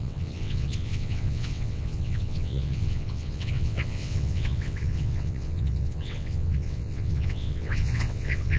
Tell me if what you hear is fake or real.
fake